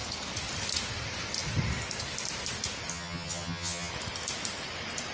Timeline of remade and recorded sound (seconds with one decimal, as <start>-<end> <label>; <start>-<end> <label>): 0.0-2.9 recorded; 2.9-3.9 remade; 3.9-5.1 recorded